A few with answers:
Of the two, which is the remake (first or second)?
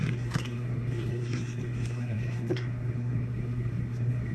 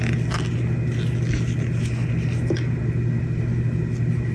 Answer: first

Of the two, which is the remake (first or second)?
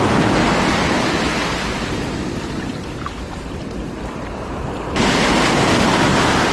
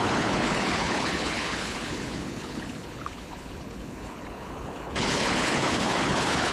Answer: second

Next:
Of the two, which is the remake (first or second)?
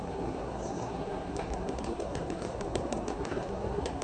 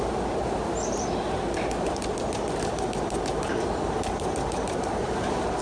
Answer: first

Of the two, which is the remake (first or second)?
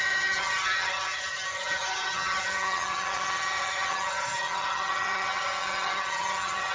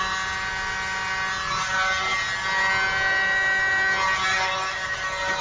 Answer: first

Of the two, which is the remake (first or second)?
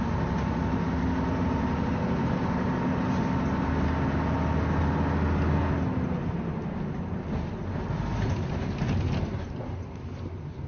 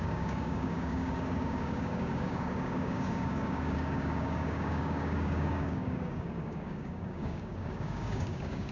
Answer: second